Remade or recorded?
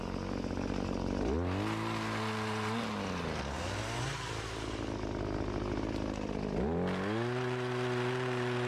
recorded